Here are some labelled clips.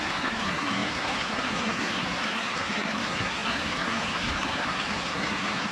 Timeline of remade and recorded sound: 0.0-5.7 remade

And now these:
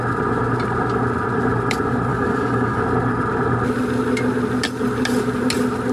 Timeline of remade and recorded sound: 0.0-2.1 recorded; 2.1-2.8 remade; 2.8-5.9 recorded

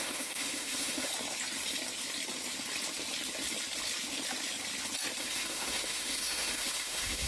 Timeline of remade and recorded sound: 0.0-1.1 remade; 1.1-5.2 recorded; 5.2-7.3 remade

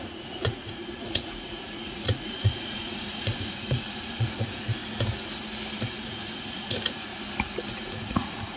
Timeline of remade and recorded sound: 0.0-4.8 remade; 4.8-5.8 recorded; 5.8-7.1 remade; 7.1-7.7 recorded; 7.7-8.6 remade